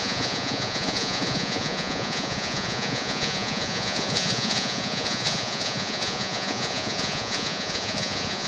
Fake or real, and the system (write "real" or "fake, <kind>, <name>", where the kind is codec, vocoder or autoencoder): fake, vocoder, Vocos